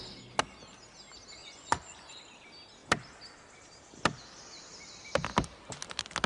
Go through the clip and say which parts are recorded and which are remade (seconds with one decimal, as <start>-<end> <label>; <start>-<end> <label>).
0.0-1.4 recorded; 1.4-2.1 remade; 2.1-6.3 recorded